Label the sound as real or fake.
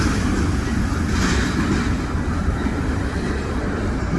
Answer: real